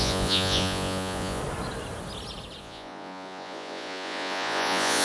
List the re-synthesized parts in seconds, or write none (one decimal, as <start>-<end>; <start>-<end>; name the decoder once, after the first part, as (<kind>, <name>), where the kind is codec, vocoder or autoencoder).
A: 0.0-1.4 (vocoder, Vocos); 2.6-5.0